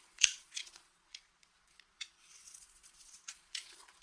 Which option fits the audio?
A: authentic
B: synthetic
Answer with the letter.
B